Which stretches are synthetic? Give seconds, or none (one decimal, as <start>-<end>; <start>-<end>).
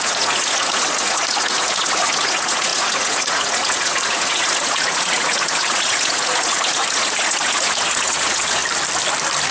0.0-8.6